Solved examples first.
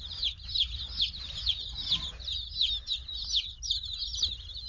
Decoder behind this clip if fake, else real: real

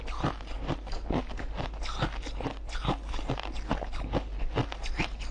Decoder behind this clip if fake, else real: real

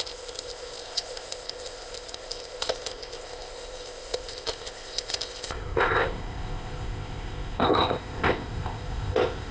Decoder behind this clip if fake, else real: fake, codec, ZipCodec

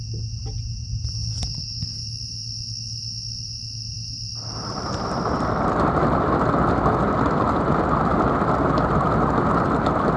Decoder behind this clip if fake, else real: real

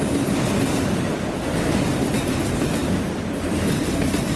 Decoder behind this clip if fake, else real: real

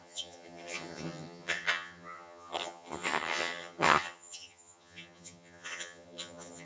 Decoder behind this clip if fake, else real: fake, vocoder, HiFi-GAN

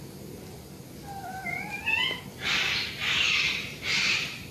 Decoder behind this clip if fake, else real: real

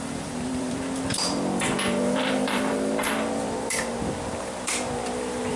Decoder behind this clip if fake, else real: fake, vocoder, BigVGAN v2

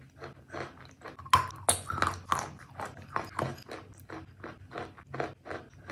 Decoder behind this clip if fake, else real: real